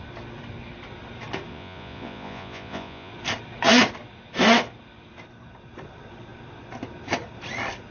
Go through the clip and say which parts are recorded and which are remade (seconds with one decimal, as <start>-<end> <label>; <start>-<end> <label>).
0.0-1.5 recorded; 1.5-3.1 remade; 3.1-7.9 recorded